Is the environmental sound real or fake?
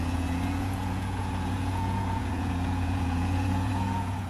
fake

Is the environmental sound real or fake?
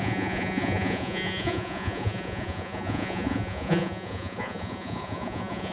fake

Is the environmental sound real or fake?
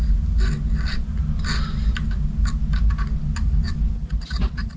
real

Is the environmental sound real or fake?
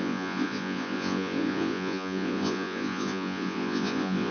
fake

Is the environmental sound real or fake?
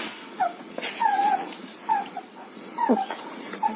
fake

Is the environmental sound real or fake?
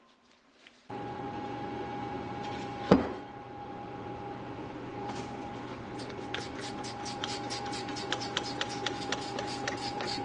fake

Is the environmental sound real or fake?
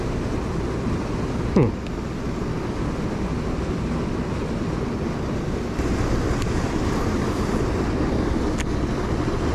real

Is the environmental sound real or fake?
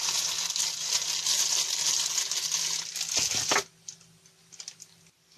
real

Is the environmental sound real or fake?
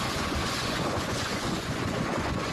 fake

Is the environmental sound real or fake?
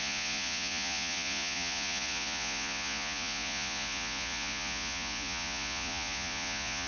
fake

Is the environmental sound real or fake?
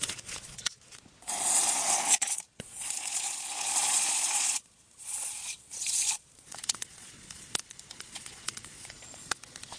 fake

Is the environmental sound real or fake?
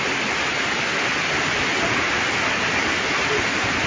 real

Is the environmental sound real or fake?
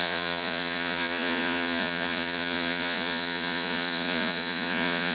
fake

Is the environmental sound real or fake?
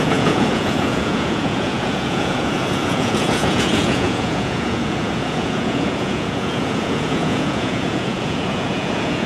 fake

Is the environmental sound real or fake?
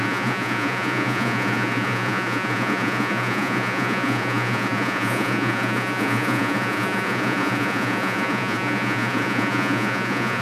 fake